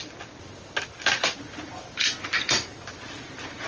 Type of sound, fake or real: real